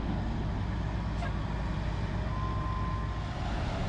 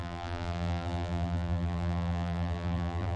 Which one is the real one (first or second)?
first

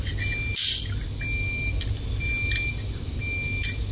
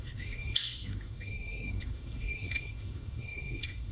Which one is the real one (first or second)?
first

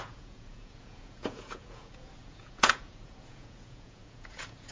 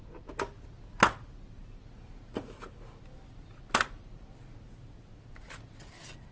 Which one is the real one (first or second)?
second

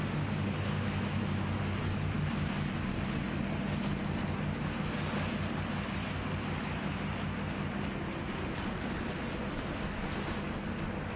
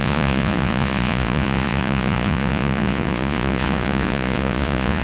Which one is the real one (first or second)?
first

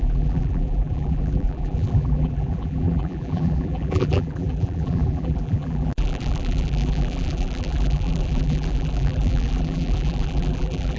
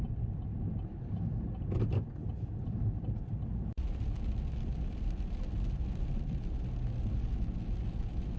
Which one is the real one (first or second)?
second